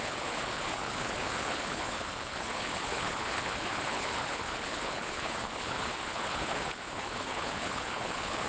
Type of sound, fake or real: fake